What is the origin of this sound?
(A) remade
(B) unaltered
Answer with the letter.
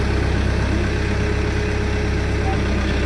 B